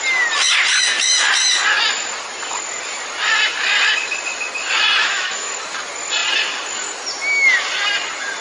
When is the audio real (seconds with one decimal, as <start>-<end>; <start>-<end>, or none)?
0.0-5.0; 5.5-8.4